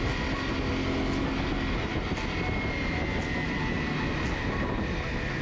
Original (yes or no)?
yes